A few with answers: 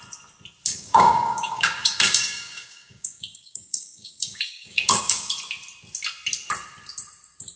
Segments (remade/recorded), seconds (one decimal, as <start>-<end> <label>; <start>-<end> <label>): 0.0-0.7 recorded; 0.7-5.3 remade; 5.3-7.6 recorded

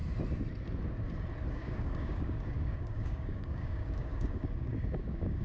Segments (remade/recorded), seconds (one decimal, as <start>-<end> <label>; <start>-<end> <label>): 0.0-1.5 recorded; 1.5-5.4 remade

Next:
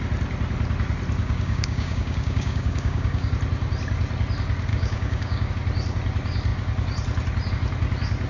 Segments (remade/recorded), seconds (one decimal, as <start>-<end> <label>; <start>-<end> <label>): 0.0-1.2 recorded; 1.2-3.3 remade; 3.3-4.7 recorded; 4.7-5.5 remade; 5.5-8.3 recorded